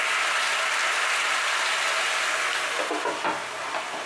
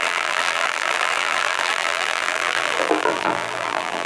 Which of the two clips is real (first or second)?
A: first